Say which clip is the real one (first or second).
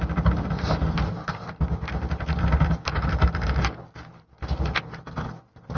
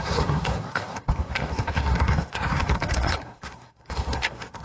first